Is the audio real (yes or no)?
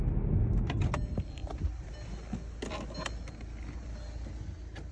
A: yes